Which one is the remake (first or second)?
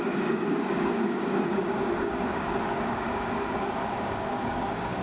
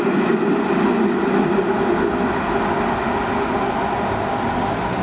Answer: first